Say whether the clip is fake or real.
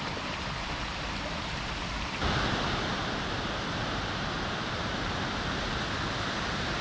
real